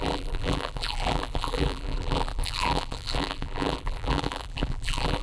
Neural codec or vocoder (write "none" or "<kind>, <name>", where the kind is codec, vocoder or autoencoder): vocoder, BigVGAN v2